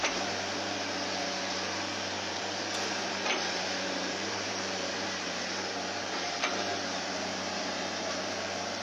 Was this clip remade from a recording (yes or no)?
yes